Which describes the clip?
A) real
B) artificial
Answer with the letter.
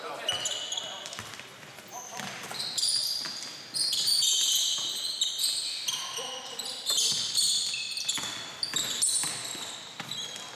A